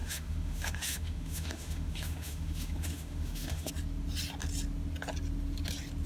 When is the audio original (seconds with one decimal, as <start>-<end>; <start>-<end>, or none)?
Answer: 3.7-6.1